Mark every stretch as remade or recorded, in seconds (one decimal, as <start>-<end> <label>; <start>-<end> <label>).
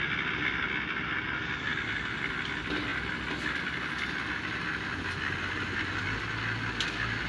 0.0-7.3 recorded